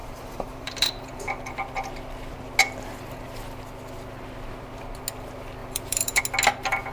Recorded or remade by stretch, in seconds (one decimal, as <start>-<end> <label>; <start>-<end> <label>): 0.0-1.6 remade; 1.6-5.6 recorded; 5.6-6.2 remade; 6.2-6.9 recorded